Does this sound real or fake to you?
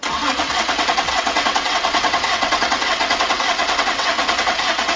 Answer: fake